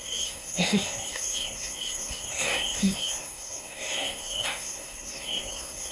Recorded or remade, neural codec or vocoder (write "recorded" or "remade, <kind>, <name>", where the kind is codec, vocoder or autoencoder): remade, codec, SNAC